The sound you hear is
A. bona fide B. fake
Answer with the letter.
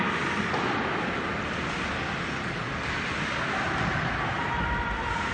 A